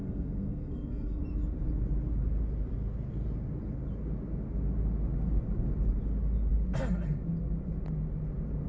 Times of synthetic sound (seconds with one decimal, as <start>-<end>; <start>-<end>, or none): 0.0-1.2